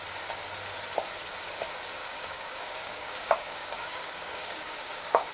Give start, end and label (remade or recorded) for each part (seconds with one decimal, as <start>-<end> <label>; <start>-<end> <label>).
0.0-2.0 recorded; 2.0-5.3 remade